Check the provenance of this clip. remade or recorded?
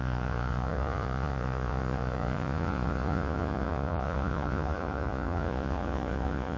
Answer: remade